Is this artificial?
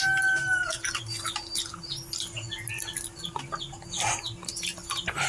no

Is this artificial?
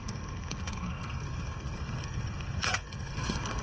yes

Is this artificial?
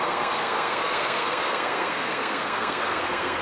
yes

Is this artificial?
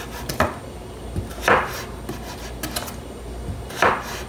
no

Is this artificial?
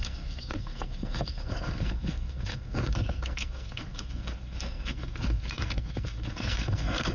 yes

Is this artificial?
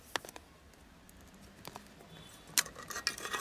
no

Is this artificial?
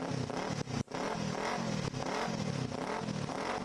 no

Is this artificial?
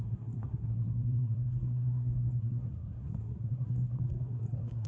yes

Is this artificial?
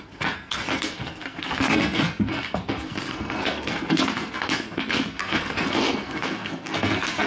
yes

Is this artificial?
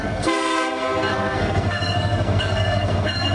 yes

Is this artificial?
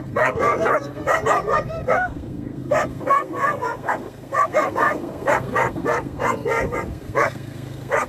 yes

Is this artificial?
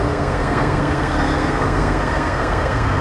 yes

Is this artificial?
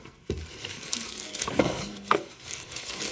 yes